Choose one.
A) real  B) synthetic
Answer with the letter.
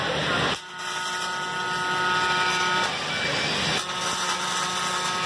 A